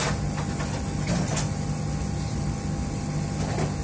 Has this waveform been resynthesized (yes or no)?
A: no